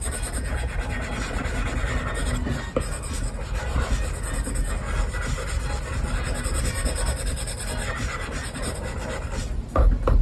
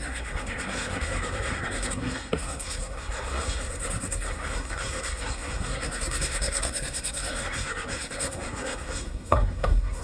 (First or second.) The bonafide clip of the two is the first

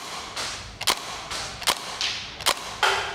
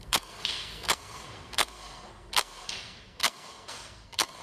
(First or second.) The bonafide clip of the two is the first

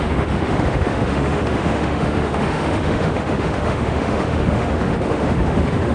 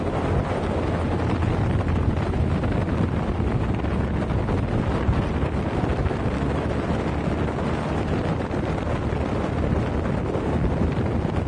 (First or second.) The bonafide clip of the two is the second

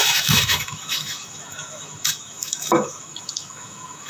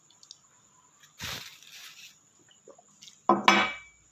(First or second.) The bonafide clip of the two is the second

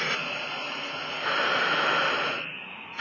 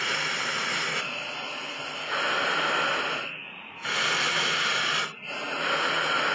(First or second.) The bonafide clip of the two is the second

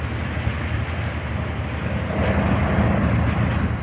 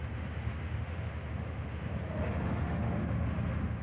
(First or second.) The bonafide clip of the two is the first